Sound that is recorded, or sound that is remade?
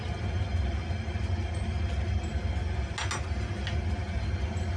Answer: recorded